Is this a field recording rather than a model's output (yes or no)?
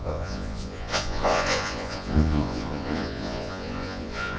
no